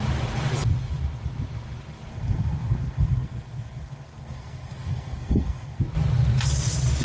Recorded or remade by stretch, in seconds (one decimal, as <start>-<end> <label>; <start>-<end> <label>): 0.0-2.1 recorded; 2.1-5.8 remade; 5.8-7.0 recorded